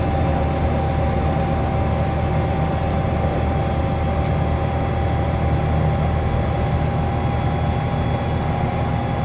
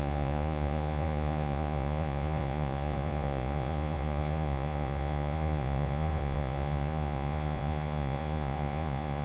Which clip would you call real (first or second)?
first